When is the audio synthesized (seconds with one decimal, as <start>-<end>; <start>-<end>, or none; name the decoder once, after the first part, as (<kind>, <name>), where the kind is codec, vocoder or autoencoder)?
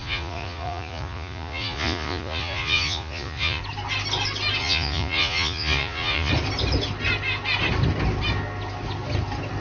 0.0-3.6 (vocoder, Vocos); 4.6-6.3